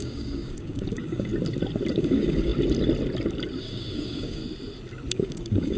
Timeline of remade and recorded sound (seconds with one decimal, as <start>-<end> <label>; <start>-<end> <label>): 0.0-1.3 remade; 1.3-1.9 recorded; 1.9-2.5 remade; 2.5-3.6 recorded; 3.6-4.4 remade; 4.4-5.1 recorded; 5.1-5.8 remade